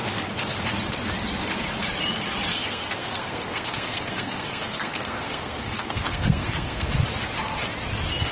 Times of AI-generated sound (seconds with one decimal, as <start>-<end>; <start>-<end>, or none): 2.5-6.9